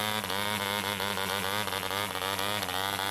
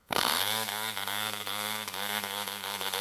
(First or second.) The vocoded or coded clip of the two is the second